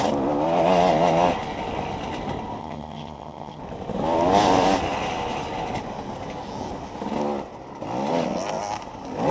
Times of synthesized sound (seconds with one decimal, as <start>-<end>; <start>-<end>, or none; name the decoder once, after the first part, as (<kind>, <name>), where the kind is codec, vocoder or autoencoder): 2.6-3.6 (vocoder, HiFi-GAN)